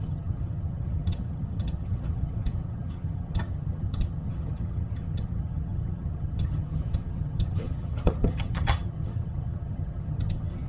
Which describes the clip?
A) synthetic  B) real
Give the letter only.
A